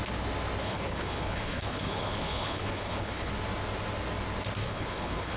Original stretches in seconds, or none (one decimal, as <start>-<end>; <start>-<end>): 0.0-0.6; 3.3-4.6